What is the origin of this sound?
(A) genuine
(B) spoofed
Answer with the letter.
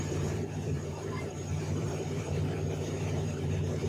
B